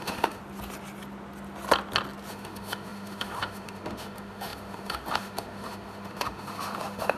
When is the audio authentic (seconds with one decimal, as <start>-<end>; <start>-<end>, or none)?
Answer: 0.4-2.3

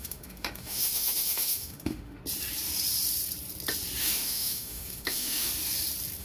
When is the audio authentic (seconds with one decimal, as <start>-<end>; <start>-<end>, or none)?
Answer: 2.2-4.0; 5.5-6.2

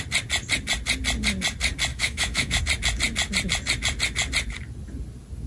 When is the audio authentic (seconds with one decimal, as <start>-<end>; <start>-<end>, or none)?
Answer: 0.0-1.9; 2.6-5.5